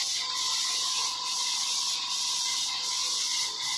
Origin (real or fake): real